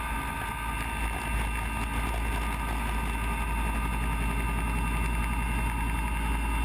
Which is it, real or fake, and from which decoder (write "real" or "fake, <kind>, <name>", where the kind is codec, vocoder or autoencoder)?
real